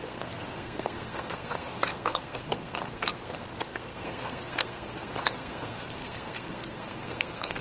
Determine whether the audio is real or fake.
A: fake